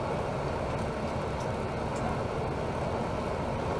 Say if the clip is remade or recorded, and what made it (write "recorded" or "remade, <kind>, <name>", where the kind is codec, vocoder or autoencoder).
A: recorded